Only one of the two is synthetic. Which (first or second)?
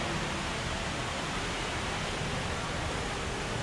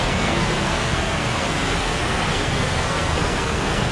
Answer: second